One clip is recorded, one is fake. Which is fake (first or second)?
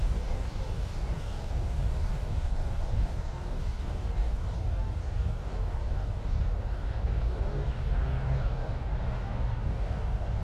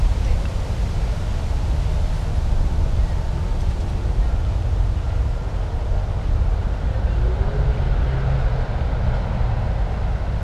first